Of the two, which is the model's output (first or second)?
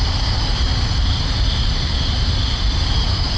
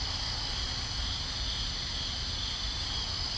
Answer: first